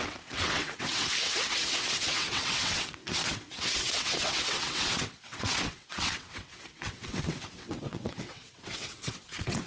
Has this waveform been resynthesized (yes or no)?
yes